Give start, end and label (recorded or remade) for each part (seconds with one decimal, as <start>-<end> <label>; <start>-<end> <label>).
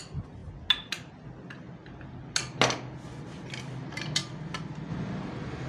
0.0-5.7 recorded